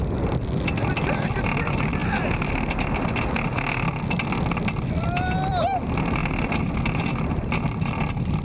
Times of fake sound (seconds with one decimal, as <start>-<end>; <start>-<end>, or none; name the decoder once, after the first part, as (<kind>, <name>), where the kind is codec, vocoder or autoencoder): none